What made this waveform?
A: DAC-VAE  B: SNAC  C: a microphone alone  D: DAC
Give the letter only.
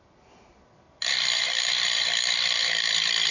C